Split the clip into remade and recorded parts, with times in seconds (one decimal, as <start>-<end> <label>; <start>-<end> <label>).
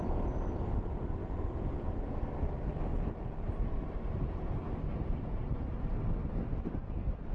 0.0-1.2 recorded; 1.2-1.9 remade; 1.9-2.9 recorded; 2.9-3.5 remade; 3.5-7.3 recorded